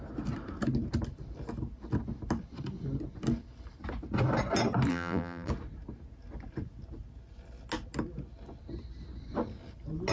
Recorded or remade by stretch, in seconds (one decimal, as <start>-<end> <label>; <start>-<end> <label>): 0.0-4.9 recorded; 4.9-5.5 remade; 5.5-10.1 recorded